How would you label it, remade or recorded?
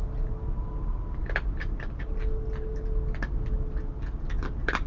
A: recorded